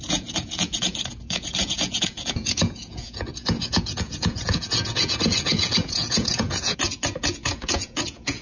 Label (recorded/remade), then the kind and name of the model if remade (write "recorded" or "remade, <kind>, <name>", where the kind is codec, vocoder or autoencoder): remade, vocoder, Vocos